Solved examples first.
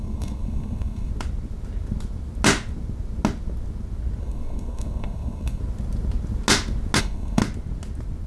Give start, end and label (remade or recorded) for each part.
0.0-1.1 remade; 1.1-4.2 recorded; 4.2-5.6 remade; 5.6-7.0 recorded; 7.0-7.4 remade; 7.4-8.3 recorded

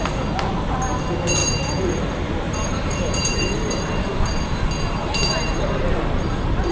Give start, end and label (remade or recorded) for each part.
0.0-1.4 recorded; 1.4-4.4 remade; 4.4-5.0 recorded; 5.0-6.7 remade